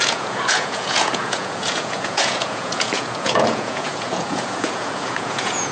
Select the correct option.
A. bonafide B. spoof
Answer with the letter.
B